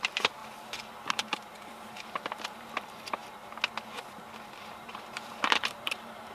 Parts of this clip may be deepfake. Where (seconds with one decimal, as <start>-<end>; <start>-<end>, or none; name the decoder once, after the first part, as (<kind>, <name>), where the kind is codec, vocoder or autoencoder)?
0.0-0.4 (vocoder, BigVGAN v2); 1.1-3.2; 4.6-6.3